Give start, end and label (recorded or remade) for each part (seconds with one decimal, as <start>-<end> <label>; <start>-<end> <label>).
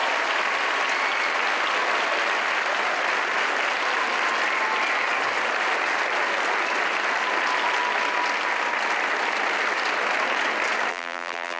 0.0-10.9 recorded; 10.9-11.6 remade